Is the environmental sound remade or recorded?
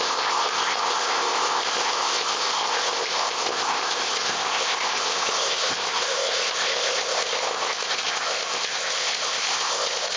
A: remade